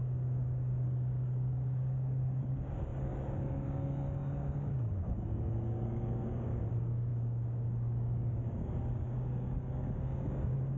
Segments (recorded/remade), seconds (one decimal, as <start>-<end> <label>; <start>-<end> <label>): 0.0-10.8 remade